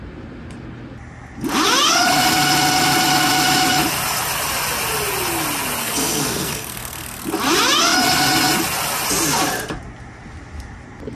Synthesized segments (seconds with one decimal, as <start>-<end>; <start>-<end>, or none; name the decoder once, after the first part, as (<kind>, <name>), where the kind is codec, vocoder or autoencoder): 5.8-7.2 (codec, SNAC)